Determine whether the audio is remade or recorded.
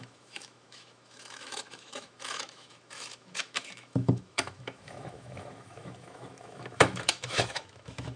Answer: remade